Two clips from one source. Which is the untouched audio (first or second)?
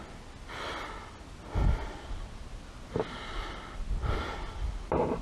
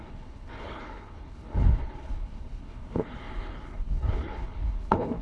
first